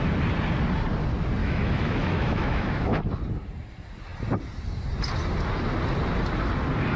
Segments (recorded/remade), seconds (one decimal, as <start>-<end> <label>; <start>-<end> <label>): 0.0-1.4 recorded; 1.4-3.0 remade; 3.0-7.0 recorded